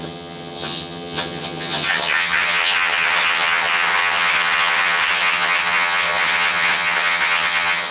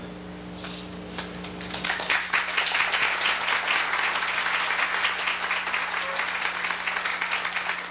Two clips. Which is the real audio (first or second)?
second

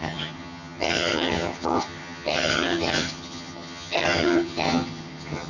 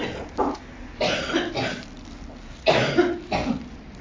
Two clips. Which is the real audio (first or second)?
second